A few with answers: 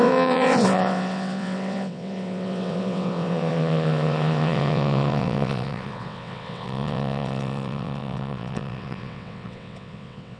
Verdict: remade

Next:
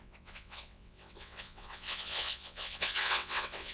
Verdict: remade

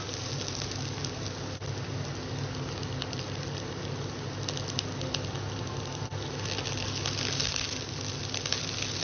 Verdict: recorded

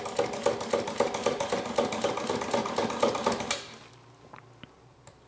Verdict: recorded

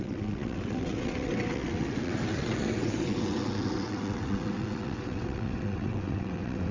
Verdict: remade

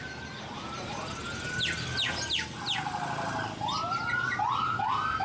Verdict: recorded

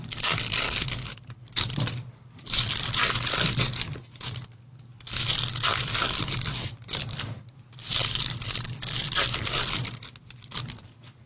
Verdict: recorded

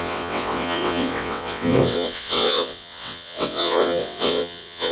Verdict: remade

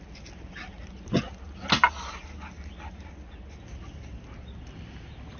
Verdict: recorded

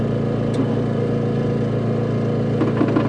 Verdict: recorded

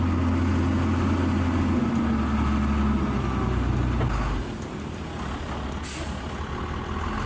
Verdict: recorded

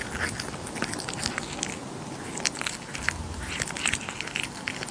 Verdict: recorded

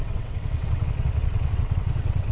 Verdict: remade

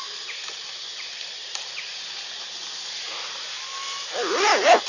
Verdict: recorded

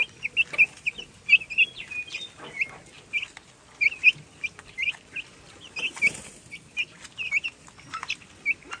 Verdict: recorded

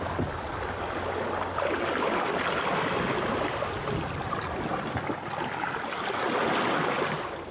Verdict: recorded